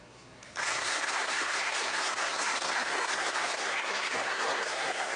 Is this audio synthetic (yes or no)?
yes